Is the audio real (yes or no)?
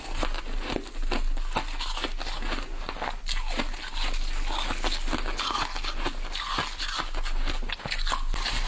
yes